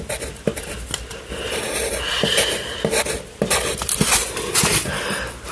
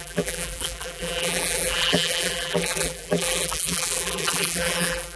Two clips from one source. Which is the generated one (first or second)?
second